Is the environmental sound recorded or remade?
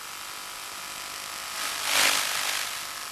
recorded